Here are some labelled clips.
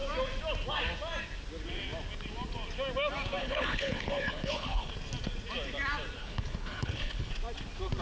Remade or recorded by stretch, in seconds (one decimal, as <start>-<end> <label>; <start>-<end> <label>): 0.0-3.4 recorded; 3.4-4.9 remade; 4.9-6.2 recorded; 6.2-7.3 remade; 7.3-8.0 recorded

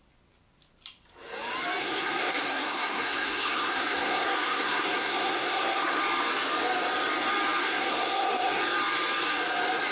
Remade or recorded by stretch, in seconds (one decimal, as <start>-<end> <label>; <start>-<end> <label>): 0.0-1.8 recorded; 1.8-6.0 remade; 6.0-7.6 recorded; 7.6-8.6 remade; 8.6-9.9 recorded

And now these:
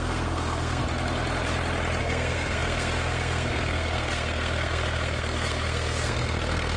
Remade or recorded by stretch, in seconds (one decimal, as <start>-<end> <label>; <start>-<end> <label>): 0.0-0.8 remade; 0.8-2.0 recorded; 2.0-6.8 remade

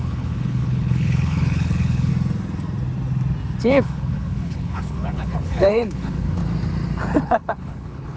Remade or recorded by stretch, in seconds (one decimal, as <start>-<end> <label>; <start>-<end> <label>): 0.0-2.1 remade; 2.1-3.6 recorded; 3.6-6.4 remade; 6.4-7.2 recorded; 7.2-8.2 remade

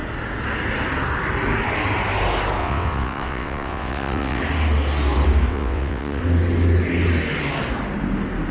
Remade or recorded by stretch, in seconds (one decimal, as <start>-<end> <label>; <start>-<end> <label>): 0.0-2.6 recorded; 2.6-4.4 remade; 4.4-5.5 recorded; 5.5-6.2 remade; 6.2-8.5 recorded

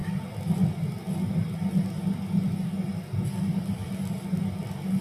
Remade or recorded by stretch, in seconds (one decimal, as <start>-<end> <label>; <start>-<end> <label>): 0.0-5.0 recorded